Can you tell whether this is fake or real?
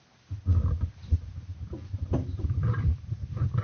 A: real